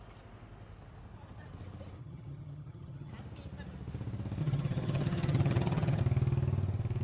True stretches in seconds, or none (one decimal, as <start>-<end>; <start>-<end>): 0.0-2.0; 3.1-4.4; 6.0-7.0